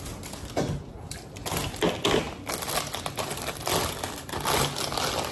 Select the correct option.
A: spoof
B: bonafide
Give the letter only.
B